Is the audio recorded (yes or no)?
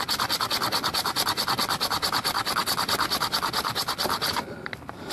yes